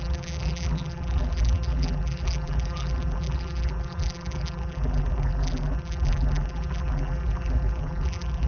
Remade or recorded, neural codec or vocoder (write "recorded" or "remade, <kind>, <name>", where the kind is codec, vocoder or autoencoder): remade, vocoder, BigVGAN v2